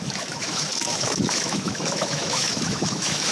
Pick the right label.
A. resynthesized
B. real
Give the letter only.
A